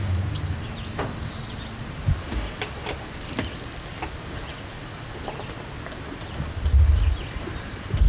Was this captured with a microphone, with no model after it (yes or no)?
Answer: yes